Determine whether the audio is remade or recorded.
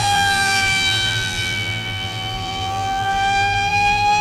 remade